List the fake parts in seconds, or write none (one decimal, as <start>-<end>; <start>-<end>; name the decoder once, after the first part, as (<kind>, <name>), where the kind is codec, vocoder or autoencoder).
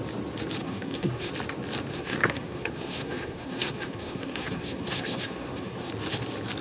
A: 0.6-1.3 (codec, SNAC); 1.9-5.9